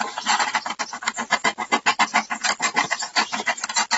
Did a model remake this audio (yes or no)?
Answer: no